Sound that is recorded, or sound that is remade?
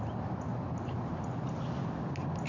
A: recorded